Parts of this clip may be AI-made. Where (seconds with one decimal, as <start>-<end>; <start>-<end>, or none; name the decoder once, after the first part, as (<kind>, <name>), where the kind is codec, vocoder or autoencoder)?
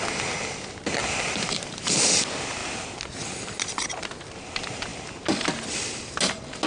none